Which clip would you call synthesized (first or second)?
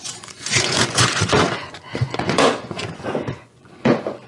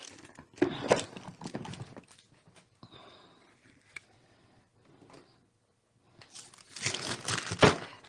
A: first